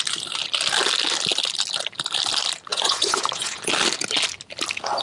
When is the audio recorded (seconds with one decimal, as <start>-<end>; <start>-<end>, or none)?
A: 0.0-2.7; 3.7-5.0